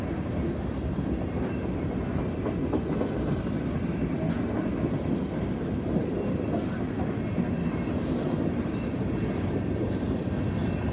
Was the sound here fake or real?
real